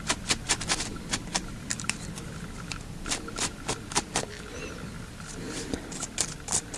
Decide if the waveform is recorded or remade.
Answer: remade